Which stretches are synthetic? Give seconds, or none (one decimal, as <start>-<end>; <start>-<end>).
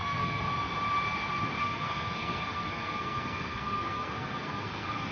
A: 0.0-0.5; 1.6-5.1